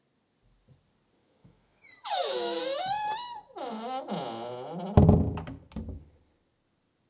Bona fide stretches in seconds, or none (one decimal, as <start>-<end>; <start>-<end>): 0.0-1.2; 2.6-7.1